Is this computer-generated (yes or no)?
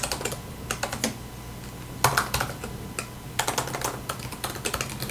no